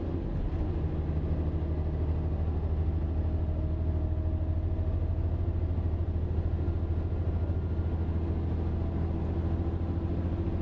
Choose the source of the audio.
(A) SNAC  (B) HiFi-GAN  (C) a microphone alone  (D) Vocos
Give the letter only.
C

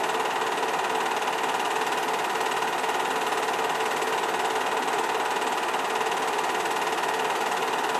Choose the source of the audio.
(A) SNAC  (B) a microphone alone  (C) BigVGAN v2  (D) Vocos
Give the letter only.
B